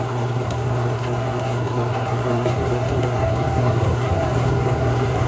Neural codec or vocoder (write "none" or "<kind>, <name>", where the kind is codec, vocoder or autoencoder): codec, SNAC